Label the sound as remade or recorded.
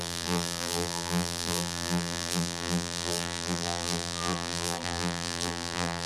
remade